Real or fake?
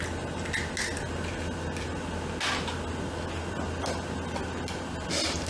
real